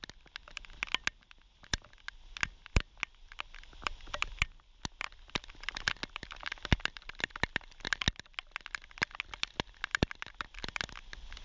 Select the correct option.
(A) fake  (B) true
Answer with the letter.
B